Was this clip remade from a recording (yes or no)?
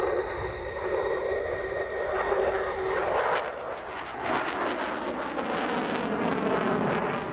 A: no